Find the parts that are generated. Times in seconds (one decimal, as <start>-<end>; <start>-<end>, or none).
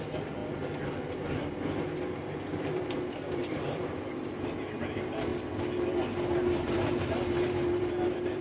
0.0-0.4; 2.3-8.4